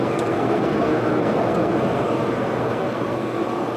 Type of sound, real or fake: fake